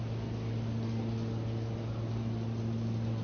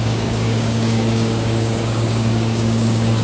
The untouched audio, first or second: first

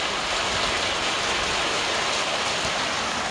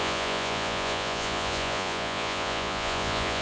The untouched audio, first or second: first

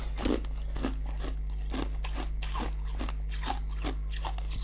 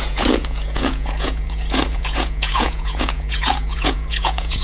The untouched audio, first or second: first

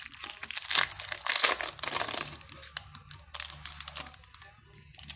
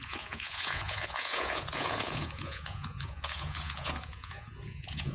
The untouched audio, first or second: first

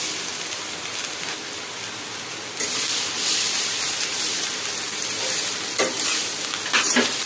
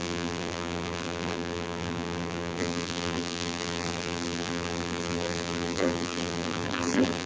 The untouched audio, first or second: first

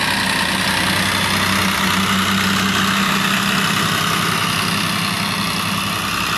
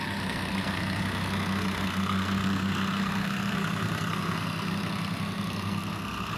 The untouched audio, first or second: first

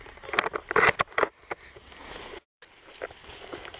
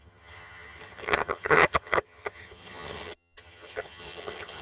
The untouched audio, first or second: first